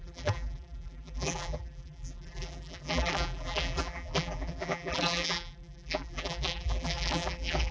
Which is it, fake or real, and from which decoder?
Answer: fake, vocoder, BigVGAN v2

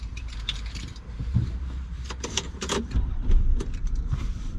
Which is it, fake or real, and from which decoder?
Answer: fake, vocoder, BigVGAN v2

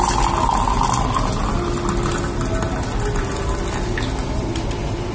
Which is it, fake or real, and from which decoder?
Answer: real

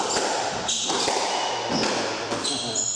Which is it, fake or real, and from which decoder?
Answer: real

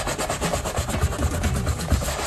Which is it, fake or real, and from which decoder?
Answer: real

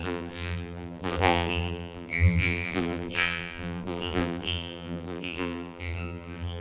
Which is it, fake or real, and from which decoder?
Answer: fake, vocoder, BigVGAN v2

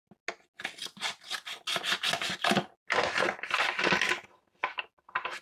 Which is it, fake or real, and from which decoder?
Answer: real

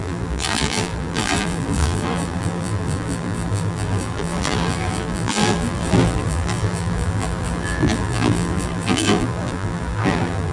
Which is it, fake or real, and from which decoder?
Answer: fake, vocoder, BigVGAN v2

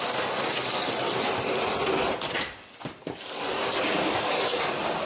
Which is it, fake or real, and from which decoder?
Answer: fake, vocoder, BigVGAN v2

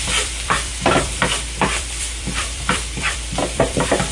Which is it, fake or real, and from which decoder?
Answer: fake, vocoder, BigVGAN v2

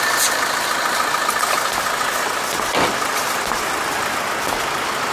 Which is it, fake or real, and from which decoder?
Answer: real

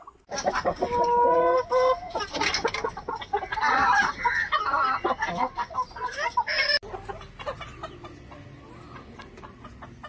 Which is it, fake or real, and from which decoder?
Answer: real